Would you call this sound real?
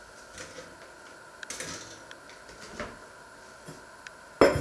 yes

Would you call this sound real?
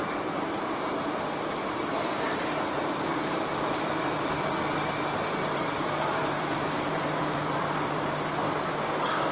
no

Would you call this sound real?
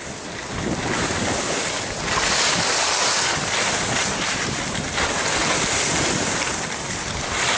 yes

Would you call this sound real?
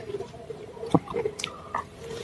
no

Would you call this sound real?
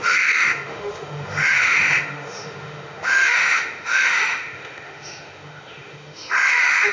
no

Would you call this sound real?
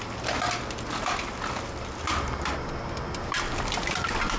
yes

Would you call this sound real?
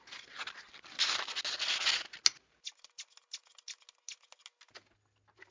yes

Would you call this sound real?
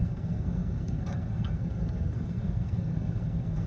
no